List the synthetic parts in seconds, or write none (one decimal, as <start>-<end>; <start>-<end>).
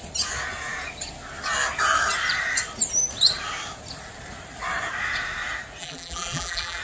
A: 5.8-6.8